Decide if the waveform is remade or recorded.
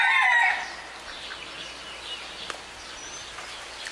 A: recorded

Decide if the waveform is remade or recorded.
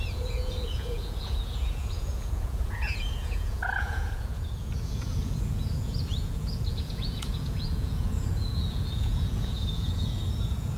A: remade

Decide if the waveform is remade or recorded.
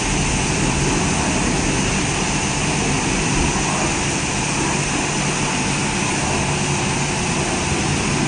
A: recorded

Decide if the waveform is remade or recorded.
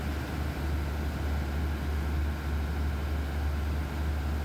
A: recorded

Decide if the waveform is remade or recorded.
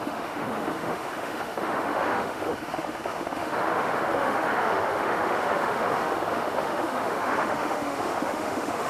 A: remade